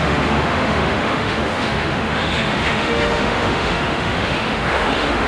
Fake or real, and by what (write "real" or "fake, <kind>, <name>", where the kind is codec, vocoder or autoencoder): fake, autoencoder, DAC-VAE